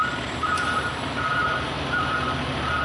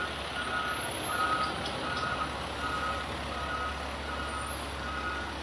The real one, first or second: second